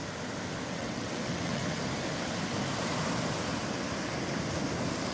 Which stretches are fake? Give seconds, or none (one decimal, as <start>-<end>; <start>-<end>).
0.7-1.6